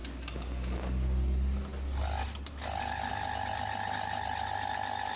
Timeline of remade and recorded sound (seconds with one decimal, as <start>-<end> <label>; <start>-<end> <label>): 0.0-5.2 recorded